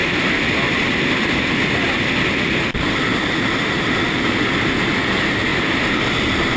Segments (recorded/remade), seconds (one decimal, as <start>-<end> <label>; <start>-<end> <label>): 0.0-6.6 recorded